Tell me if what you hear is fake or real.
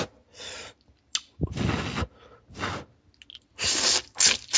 real